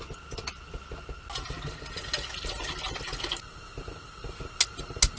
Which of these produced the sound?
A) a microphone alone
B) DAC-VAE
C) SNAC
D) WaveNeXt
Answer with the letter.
A